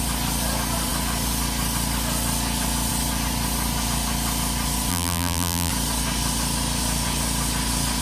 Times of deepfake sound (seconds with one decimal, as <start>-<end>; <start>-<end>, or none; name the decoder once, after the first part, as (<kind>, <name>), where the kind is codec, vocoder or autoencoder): 4.9-5.7 (vocoder, BigVGAN v2)